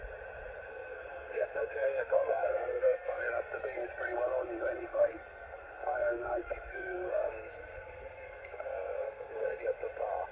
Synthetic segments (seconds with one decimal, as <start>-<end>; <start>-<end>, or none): 0.7-3.2; 4.9-9.6